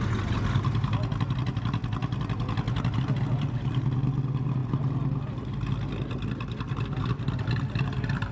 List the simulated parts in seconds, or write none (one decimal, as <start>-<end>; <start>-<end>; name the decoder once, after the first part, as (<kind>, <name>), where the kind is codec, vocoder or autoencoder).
none